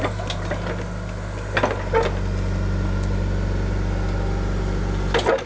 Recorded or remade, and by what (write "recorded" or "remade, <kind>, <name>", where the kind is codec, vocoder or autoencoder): recorded